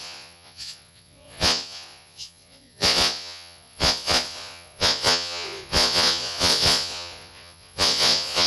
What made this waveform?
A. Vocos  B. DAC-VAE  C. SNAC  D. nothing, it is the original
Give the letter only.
A